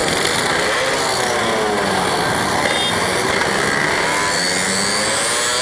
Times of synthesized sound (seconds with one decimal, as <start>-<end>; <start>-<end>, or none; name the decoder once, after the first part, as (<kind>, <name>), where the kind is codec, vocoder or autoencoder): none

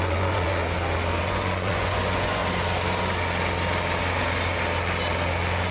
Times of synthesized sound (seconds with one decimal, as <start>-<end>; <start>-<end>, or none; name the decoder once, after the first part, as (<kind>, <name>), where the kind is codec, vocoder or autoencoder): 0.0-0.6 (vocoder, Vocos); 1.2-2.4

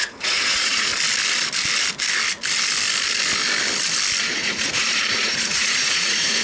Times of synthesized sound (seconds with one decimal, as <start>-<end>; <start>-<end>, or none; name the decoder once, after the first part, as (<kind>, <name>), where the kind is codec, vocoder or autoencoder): 0.0-0.9 (vocoder, Vocos); 4.2-6.4

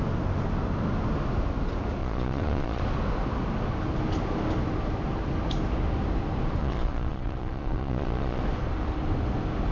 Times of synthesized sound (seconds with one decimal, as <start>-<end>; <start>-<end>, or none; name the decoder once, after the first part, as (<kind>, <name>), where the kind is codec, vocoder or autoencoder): 2.0-2.8 (vocoder, Vocos); 6.6-8.4

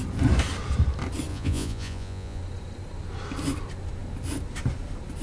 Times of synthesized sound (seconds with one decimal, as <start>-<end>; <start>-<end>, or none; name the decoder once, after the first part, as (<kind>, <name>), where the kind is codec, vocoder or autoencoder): 1.3-2.4 (vocoder, Vocos)

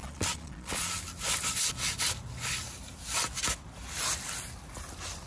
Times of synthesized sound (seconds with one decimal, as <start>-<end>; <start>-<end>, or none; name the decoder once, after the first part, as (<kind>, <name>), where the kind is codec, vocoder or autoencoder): 0.0-1.0 (vocoder, Vocos)